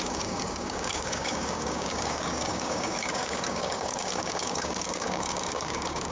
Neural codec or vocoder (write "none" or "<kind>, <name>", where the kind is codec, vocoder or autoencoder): codec, DAC